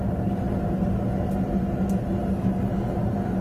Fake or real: real